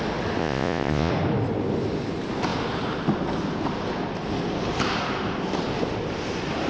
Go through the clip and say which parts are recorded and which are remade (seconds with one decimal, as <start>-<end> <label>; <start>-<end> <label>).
0.0-0.4 recorded; 0.4-1.1 remade; 1.1-6.7 recorded